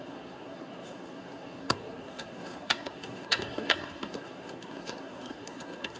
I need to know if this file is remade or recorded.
remade